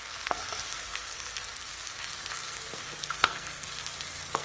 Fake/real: fake